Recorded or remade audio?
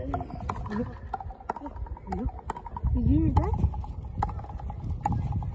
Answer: recorded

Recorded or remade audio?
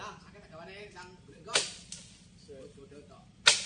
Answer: recorded